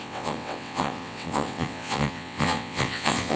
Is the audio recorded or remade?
remade